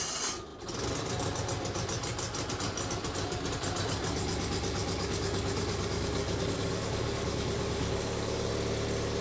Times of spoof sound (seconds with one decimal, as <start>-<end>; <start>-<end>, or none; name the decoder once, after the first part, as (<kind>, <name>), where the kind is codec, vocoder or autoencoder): 4.8-8.5 (codec, DAC)

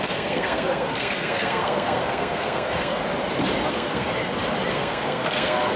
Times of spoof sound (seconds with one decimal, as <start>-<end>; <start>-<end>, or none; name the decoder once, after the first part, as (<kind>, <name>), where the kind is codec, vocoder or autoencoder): 0.0-3.0 (codec, SNAC); 3.7-4.2; 4.7-5.8